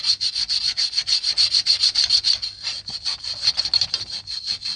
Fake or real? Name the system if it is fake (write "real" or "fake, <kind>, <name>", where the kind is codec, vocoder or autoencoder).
real